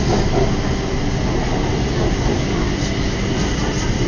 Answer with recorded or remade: recorded